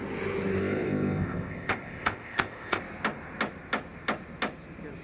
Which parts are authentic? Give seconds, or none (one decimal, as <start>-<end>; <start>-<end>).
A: 0.0-0.6; 2.8-5.0